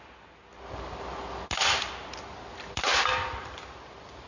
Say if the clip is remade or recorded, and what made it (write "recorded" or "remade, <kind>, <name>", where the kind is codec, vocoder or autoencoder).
recorded